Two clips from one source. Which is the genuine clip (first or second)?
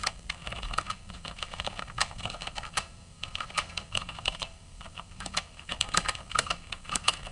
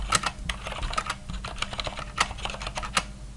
second